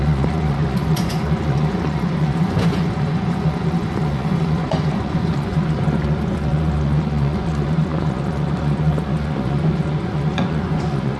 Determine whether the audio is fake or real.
fake